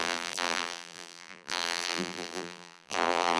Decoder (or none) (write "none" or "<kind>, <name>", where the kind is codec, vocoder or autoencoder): vocoder, BigVGAN v2